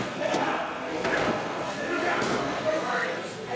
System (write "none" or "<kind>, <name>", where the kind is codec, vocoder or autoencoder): codec, SNAC